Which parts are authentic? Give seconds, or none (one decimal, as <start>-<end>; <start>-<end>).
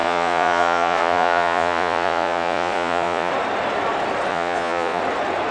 3.3-4.3; 5.0-5.5